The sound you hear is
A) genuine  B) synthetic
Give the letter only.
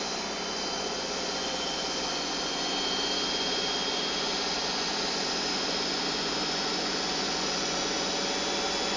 B